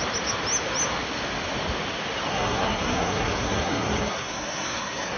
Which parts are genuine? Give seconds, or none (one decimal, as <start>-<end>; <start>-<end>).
0.0-2.3